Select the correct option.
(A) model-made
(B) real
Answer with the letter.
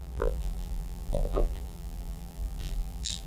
A